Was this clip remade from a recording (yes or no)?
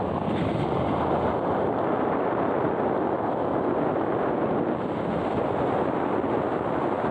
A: no